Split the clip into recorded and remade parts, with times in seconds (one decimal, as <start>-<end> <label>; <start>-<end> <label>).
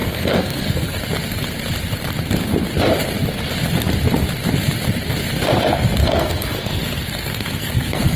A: 0.0-1.0 remade; 1.0-6.0 recorded; 6.0-8.2 remade